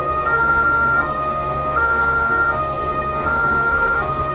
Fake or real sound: fake